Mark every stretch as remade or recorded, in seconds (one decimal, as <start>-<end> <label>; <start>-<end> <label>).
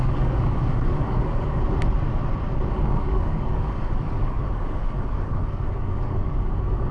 0.0-1.6 remade; 1.6-2.7 recorded; 2.7-6.9 remade